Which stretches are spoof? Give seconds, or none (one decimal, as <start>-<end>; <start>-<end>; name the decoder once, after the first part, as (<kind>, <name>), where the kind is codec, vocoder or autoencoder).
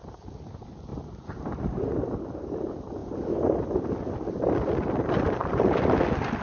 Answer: 0.9-1.4 (vocoder, BigVGAN v2); 5.4-6.0